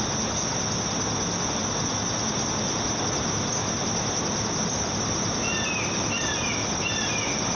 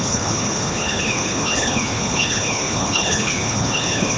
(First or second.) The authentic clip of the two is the first